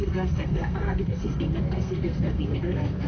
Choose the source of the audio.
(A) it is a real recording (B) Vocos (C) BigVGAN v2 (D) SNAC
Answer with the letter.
D